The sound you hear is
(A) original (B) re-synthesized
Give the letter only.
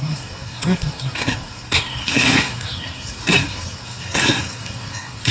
B